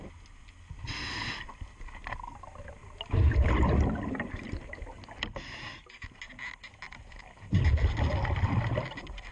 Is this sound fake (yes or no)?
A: no